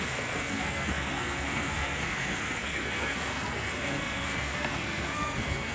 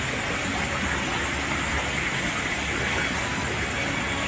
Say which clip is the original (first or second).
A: second